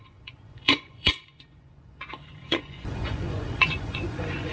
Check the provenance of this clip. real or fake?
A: fake